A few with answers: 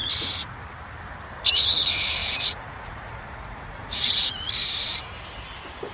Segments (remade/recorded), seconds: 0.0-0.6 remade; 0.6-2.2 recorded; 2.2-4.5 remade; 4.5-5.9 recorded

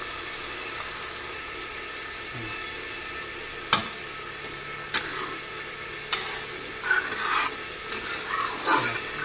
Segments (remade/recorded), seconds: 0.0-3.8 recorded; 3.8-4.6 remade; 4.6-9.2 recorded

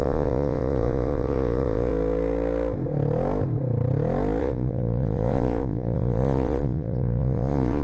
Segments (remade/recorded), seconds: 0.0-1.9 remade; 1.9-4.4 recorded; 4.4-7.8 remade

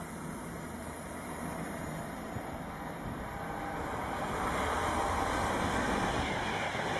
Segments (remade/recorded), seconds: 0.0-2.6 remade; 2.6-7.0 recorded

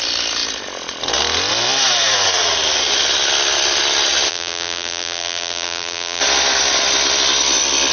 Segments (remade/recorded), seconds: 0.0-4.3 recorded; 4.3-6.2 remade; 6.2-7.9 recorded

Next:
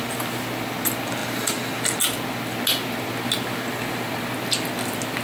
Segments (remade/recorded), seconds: 0.0-5.2 recorded

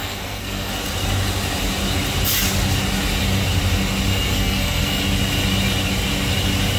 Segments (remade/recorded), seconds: 0.0-0.7 remade; 0.7-4.1 recorded; 4.1-5.0 remade; 5.0-6.8 recorded

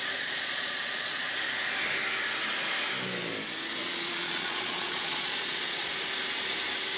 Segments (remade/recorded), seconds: 0.0-1.3 remade; 1.3-3.8 recorded; 3.8-5.9 remade; 5.9-7.0 recorded